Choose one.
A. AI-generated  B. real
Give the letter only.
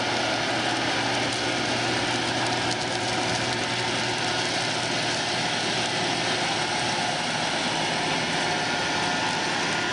B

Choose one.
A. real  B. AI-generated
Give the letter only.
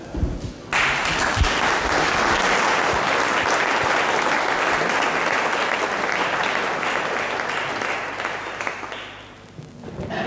A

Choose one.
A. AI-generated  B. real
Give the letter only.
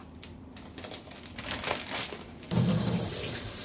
A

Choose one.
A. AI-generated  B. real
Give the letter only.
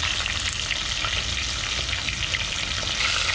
B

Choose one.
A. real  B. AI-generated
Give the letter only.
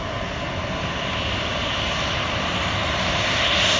A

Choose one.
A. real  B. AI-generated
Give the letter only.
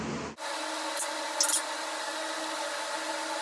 A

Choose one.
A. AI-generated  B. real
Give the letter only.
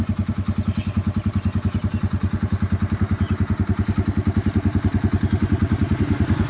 B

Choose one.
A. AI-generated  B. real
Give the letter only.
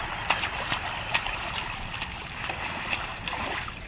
B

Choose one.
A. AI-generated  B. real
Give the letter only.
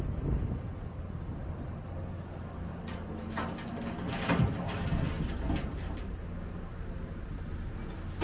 B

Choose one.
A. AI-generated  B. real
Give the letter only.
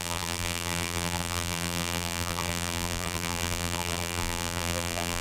A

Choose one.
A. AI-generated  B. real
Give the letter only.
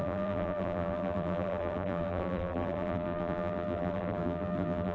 A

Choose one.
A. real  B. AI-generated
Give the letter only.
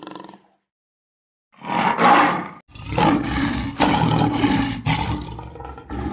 A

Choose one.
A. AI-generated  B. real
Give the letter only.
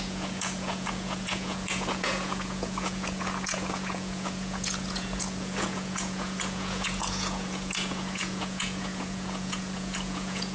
A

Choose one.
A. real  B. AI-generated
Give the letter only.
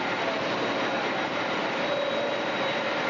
A